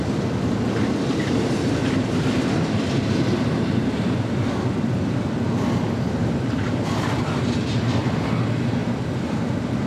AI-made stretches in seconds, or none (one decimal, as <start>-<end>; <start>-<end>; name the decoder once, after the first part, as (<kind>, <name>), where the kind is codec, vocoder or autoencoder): 1.8-3.8 (vocoder, BigVGAN v2); 6.2-7.8